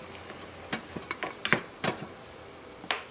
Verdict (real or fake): real